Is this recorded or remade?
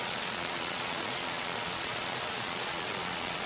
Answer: remade